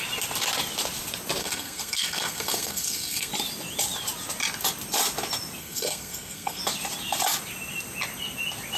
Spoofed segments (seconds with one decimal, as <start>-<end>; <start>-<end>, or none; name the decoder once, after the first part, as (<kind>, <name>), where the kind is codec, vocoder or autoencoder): 1.4-3.3 (codec, SNAC); 5.6-6.6